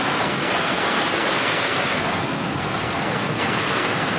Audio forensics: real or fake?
fake